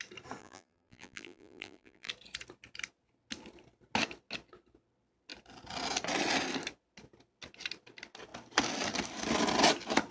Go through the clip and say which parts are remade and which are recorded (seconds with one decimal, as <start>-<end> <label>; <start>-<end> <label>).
0.0-0.4 recorded; 0.4-2.1 remade; 2.1-10.1 recorded